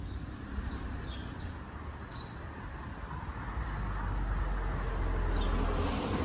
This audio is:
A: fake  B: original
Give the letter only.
B